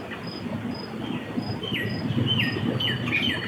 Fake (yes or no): no